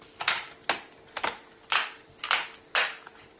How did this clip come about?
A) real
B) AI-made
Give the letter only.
A